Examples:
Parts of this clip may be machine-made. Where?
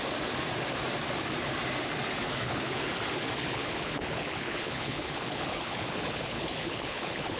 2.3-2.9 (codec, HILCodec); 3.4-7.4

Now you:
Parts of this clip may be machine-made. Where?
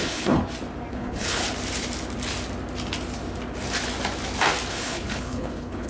0.0-0.4 (codec, HILCodec); 0.9-1.4; 4.7-5.9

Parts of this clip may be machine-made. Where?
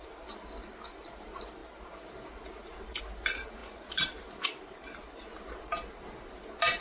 none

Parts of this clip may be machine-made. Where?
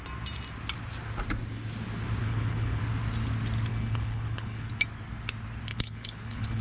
2.2-2.8 (codec, HILCodec); 3.7-4.7; 5.7-6.6